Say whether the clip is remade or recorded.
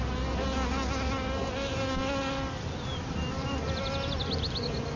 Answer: recorded